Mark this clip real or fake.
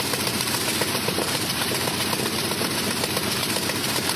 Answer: fake